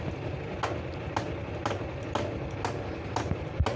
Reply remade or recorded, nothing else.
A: recorded